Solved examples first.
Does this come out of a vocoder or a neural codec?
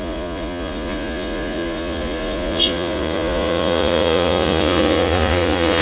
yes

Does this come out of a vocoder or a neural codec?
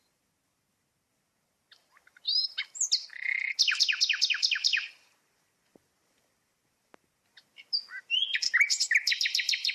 no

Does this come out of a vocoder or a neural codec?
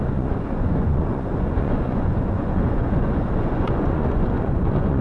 yes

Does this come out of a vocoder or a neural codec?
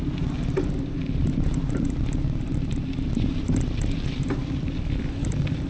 no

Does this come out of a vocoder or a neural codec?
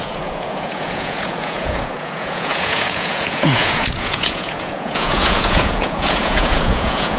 yes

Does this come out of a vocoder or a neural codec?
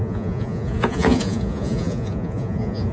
yes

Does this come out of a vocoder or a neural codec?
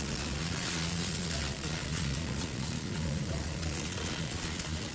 yes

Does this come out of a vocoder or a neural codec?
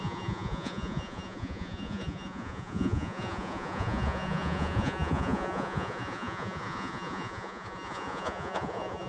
yes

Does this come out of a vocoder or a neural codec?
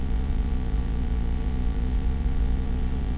yes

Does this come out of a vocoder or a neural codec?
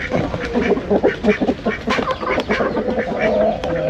no